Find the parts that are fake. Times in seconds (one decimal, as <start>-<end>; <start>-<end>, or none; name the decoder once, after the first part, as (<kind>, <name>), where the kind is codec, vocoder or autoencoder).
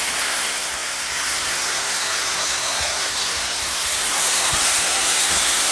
0.0-5.7 (codec, SNAC)